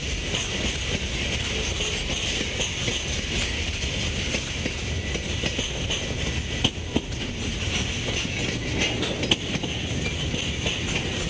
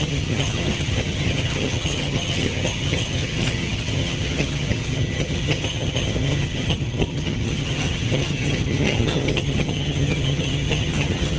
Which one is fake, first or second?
second